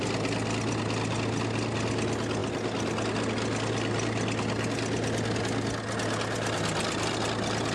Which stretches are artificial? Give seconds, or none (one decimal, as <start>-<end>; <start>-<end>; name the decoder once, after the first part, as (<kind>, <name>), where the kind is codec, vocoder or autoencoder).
none